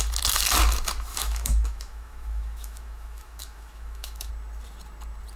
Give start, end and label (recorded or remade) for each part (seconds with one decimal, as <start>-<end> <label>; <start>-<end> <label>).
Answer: 0.0-1.1 recorded; 1.1-4.3 remade; 4.3-5.4 recorded